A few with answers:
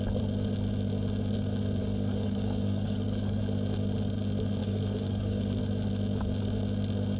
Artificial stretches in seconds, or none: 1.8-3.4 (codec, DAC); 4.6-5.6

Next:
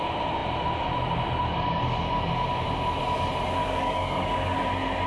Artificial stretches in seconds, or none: 3.6-4.6 (codec, DAC)

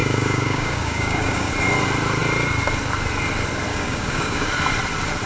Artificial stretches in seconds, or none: 0.0-1.5 (codec, DAC); 3.7-4.5

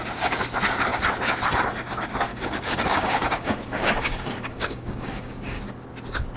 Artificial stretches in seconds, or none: 2.3-5.6 (codec, DAC)

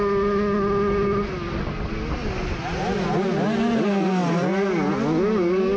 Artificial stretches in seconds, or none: none

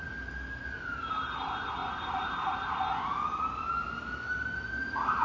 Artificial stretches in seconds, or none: none

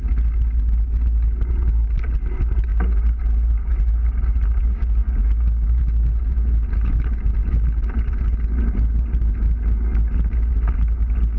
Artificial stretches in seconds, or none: 4.6-5.8 (codec, DAC)